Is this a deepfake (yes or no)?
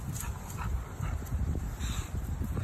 yes